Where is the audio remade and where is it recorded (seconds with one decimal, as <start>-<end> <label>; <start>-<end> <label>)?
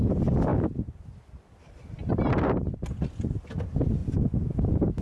0.0-5.0 recorded